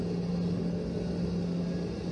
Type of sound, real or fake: real